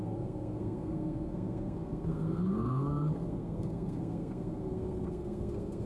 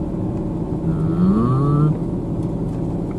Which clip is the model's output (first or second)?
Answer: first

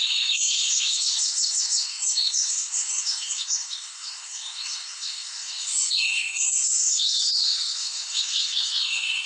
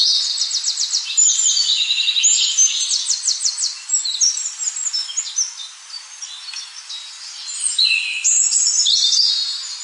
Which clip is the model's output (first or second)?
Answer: first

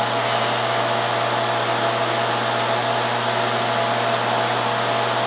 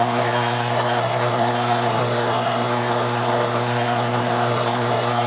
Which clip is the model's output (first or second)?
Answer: second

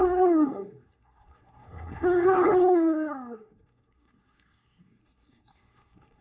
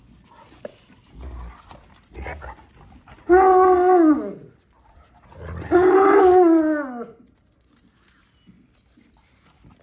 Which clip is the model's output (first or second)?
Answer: first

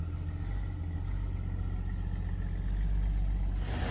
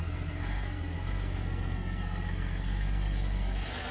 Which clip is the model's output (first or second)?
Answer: second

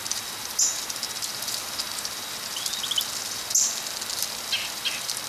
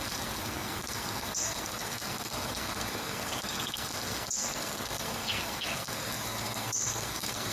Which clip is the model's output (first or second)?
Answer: second